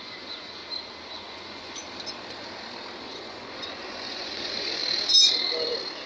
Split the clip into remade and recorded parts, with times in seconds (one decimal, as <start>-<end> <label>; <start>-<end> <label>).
0.0-0.6 remade; 0.6-1.1 recorded; 1.1-1.8 remade; 1.8-3.0 recorded; 3.0-4.8 remade; 4.8-6.1 recorded

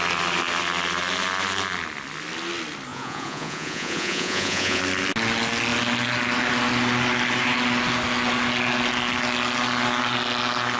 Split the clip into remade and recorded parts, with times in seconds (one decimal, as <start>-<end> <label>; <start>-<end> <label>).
0.0-2.9 recorded; 2.9-4.8 remade; 4.8-10.8 recorded

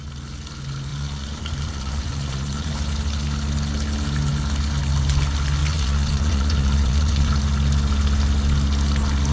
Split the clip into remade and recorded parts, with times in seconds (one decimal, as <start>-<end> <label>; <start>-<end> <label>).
0.0-0.9 recorded; 0.9-2.7 remade; 2.7-5.6 recorded; 5.6-7.3 remade; 7.3-9.3 recorded

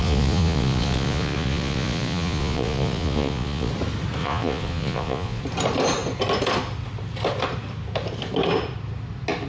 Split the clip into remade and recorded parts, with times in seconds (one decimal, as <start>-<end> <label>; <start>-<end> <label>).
0.0-3.7 remade; 3.7-4.2 recorded; 4.2-5.4 remade; 5.4-9.5 recorded

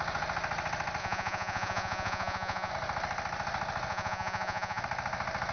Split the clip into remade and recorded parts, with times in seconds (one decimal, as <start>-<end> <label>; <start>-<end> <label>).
0.0-1.0 recorded; 1.0-2.7 remade; 2.7-3.9 recorded; 3.9-4.8 remade; 4.8-5.5 recorded